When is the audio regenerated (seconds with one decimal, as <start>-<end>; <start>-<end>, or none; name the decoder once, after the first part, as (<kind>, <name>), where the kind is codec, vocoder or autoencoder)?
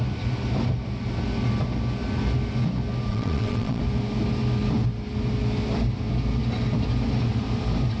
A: 3.1-3.8 (vocoder, WaveNeXt)